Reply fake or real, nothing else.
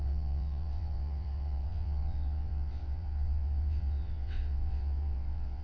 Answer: fake